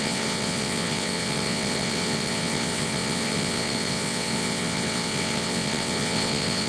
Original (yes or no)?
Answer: no